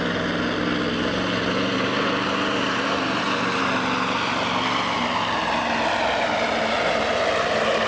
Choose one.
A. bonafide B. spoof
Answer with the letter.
A